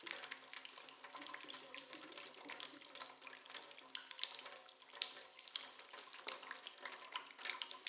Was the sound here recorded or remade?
recorded